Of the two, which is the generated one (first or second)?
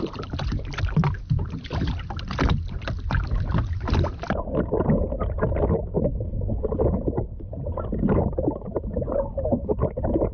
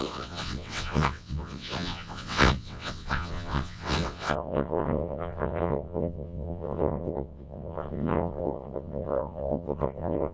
second